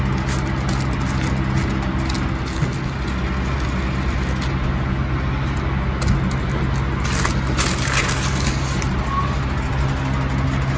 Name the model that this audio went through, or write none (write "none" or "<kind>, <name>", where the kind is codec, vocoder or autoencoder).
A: none